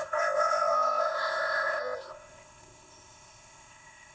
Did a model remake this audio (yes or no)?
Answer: yes